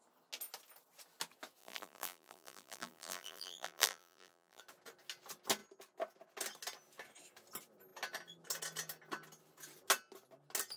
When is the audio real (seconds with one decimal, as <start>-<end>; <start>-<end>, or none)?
0.0-1.6; 4.6-10.8